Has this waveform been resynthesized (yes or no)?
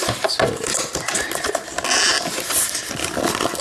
no